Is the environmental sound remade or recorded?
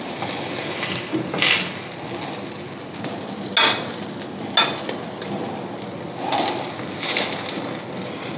recorded